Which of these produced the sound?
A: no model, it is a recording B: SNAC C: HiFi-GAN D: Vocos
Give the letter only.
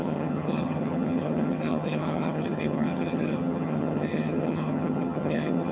C